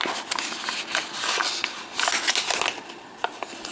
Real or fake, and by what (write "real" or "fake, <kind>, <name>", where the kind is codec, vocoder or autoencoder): real